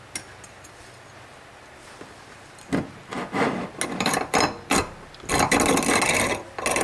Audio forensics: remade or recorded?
recorded